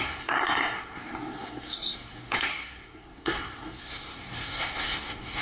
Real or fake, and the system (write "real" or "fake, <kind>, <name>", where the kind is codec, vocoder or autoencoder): fake, codec, SNAC